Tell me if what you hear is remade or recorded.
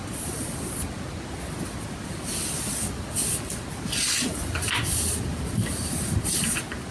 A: recorded